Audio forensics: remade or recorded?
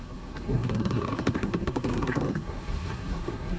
remade